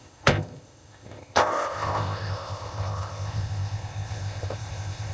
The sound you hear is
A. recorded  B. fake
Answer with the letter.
B